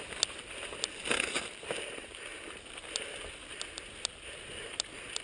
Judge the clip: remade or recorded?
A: recorded